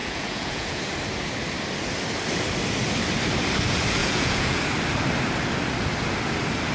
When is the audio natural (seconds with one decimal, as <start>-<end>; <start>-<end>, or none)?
0.8-4.0; 4.6-6.7